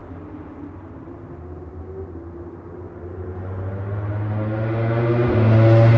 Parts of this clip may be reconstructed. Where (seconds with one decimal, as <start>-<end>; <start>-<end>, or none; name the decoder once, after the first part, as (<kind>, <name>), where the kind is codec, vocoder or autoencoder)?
none